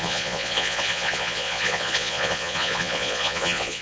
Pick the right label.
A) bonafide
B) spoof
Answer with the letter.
B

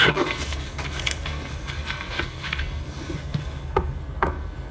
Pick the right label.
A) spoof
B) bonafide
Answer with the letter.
A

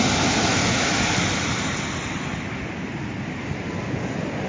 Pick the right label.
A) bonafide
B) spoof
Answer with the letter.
A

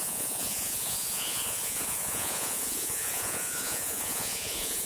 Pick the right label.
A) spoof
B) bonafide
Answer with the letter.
A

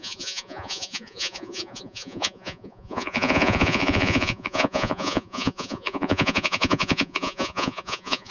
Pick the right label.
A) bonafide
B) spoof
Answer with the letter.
B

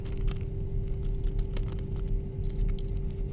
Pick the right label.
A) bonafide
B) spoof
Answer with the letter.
A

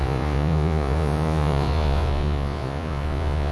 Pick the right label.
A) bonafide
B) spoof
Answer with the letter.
B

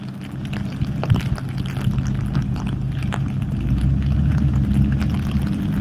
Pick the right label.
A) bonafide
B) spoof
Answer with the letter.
A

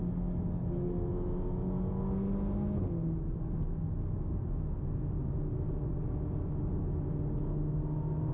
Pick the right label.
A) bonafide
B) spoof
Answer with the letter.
A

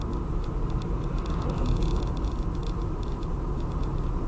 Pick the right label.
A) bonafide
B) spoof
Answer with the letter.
A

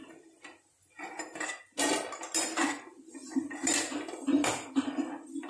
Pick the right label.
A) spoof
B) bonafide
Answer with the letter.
B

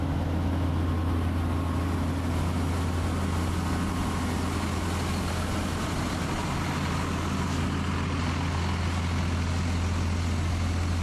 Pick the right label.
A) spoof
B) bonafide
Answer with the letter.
B